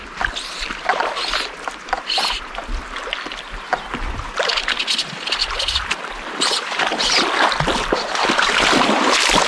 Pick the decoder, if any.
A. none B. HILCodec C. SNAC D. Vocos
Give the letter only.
A